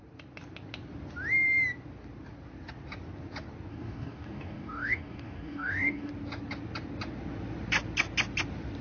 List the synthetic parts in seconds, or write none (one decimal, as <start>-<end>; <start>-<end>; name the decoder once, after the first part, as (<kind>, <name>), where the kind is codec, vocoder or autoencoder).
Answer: 3.7-6.1 (codec, DAC)